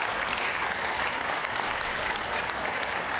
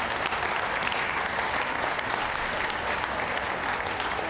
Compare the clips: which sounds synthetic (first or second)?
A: first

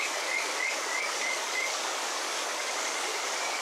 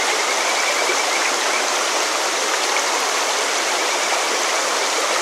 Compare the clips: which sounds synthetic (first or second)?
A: first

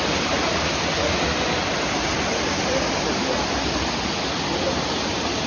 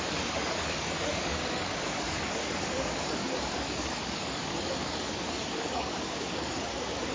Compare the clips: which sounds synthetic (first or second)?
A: second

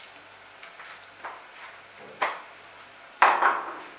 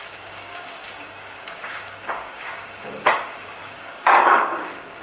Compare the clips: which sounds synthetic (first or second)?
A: second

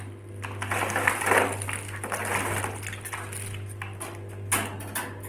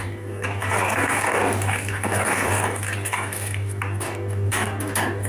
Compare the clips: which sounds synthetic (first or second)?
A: second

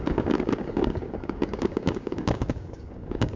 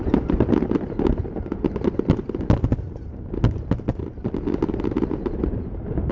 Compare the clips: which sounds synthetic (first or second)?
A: first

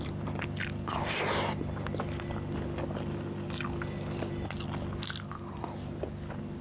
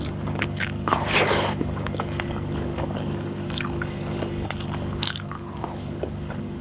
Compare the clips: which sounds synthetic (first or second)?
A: second